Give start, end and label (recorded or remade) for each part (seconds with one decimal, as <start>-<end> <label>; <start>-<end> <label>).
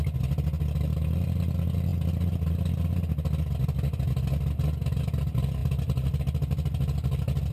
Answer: 0.0-7.5 recorded